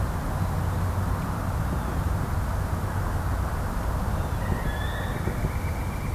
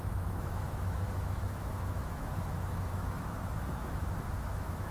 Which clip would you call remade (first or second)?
second